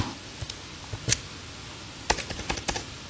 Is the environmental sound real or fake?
real